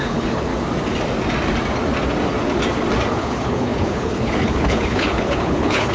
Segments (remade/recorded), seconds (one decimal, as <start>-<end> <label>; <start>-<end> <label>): 0.0-0.5 remade; 0.5-3.1 recorded; 3.1-5.9 remade